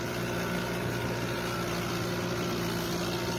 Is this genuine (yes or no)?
yes